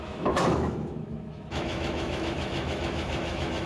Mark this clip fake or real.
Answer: fake